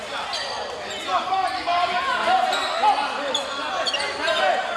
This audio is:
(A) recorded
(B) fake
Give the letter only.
A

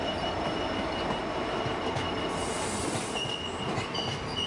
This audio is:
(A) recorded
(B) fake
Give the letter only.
A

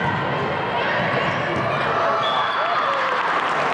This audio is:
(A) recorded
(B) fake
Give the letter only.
A